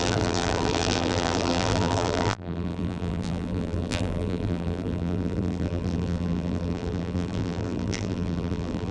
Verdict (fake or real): fake